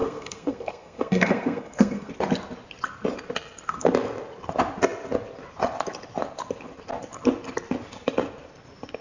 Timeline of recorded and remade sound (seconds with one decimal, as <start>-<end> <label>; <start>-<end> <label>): 0.0-2.1 remade; 2.1-9.0 recorded